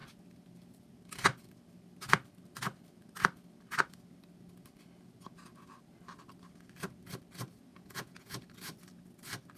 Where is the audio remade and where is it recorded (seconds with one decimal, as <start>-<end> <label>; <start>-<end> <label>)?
0.0-7.7 recorded; 7.7-8.3 remade; 8.3-9.6 recorded